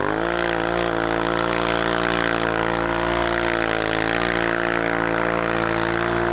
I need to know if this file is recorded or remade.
recorded